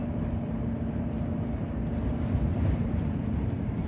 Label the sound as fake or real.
fake